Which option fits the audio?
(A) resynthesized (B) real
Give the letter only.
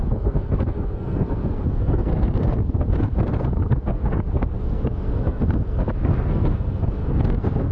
A